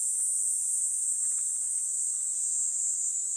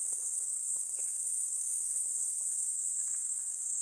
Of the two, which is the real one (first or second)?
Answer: first